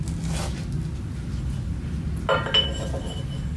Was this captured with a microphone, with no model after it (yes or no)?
yes